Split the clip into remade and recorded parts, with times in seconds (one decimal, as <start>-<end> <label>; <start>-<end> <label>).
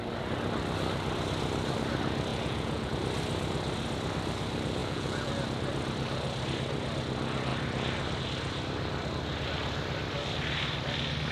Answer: 0.0-2.3 recorded; 2.3-2.9 remade; 2.9-4.8 recorded; 4.8-5.3 remade; 5.3-11.3 recorded